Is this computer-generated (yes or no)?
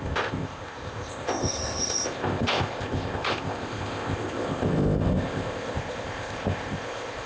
yes